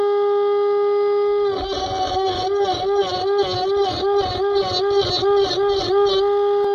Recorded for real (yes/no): yes